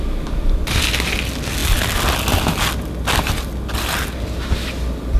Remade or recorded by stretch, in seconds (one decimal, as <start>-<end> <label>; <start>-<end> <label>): 0.0-5.2 recorded